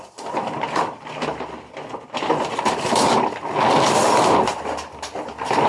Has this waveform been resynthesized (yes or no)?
no